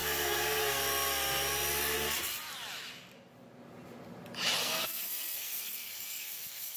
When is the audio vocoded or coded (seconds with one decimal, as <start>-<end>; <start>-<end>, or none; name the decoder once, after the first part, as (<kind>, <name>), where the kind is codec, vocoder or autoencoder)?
0.0-0.8 (codec, SNAC); 4.6-6.8